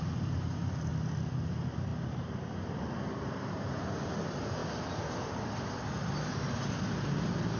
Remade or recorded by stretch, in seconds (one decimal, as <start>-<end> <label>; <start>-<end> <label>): 0.0-0.9 remade; 0.9-1.5 recorded; 1.5-4.6 remade; 4.6-7.6 recorded